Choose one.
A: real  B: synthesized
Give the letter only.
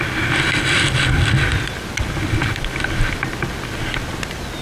A